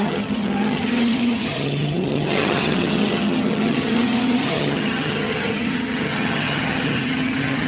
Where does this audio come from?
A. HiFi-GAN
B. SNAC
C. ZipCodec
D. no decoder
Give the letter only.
A